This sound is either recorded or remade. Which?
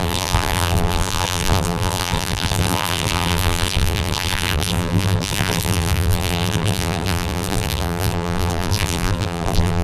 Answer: remade